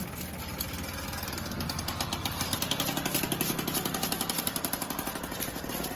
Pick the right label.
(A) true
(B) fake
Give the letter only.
A